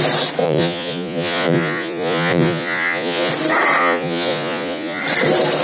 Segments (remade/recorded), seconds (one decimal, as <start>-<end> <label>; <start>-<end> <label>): 0.0-0.4 recorded; 0.4-3.3 remade; 3.3-3.8 recorded; 3.8-5.0 remade; 5.0-5.6 recorded